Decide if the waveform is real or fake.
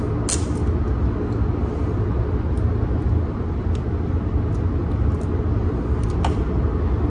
real